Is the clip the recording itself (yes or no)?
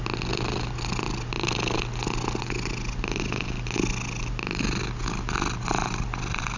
yes